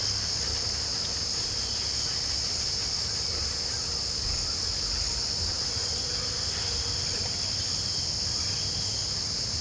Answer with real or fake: real